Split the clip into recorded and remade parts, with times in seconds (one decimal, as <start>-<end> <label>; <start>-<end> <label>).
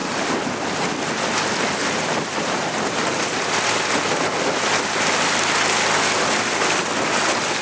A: 0.0-0.5 remade; 0.5-1.8 recorded; 1.8-3.0 remade; 3.0-7.6 recorded